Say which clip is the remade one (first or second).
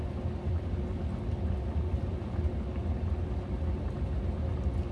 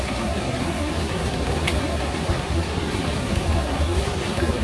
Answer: second